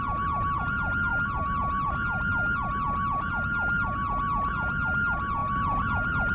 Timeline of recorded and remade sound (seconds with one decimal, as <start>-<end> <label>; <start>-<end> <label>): 0.0-6.3 recorded